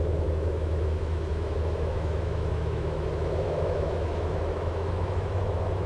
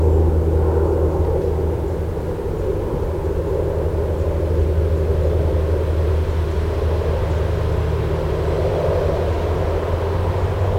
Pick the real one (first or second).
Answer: second